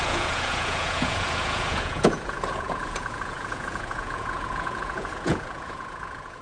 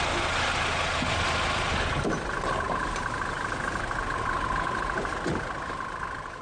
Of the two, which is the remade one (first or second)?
first